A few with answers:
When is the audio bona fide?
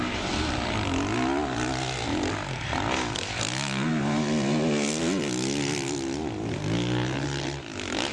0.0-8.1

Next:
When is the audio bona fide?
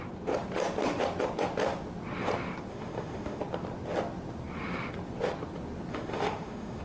0.0-2.7; 3.4-5.9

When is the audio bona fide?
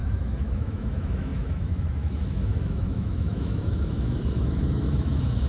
none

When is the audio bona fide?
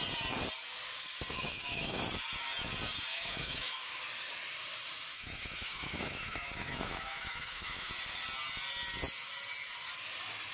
0.0-1.3; 2.0-3.1; 4.0-5.1; 7.9-10.5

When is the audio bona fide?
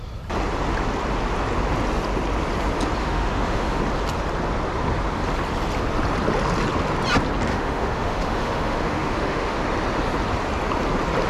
0.0-3.0; 3.8-7.5; 9.6-11.3